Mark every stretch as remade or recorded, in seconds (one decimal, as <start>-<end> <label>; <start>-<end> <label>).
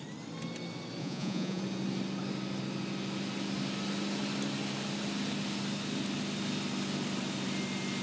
0.0-1.0 recorded; 1.0-1.6 remade; 1.6-8.0 recorded